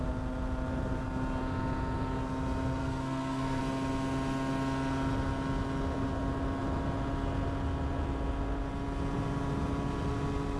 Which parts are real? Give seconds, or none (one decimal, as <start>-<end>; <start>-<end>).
0.0-2.8; 3.6-10.6